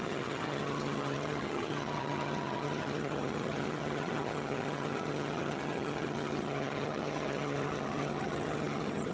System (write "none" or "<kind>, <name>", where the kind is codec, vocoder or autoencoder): vocoder, HiFi-GAN